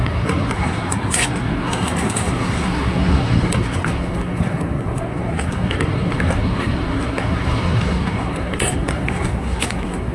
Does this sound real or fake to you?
fake